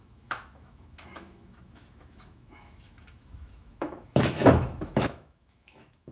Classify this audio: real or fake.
fake